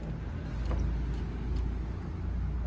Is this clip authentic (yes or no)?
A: yes